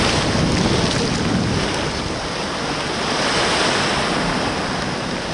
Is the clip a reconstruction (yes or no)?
no